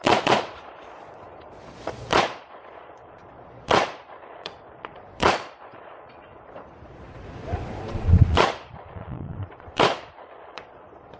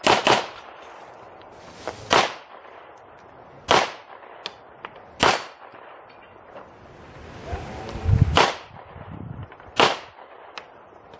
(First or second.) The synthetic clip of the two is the first